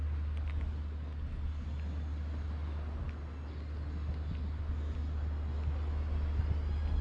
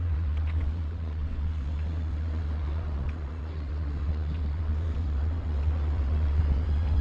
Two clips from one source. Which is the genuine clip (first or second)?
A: first